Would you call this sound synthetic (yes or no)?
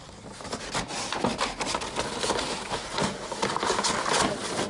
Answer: no